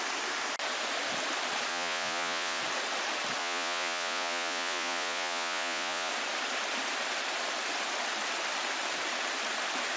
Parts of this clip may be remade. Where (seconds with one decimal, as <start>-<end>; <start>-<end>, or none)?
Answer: 1.7-2.6; 3.4-6.1